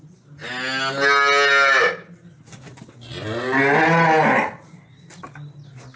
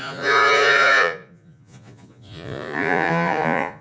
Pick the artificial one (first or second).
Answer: second